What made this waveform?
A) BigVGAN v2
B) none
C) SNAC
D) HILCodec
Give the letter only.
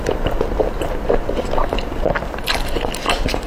B